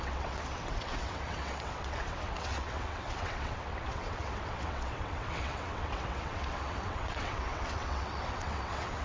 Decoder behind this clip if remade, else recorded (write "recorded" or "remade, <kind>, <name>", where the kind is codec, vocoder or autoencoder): remade, vocoder, WaveNeXt